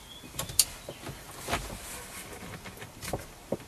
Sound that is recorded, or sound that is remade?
recorded